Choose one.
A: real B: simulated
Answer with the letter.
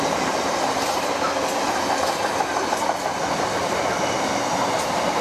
A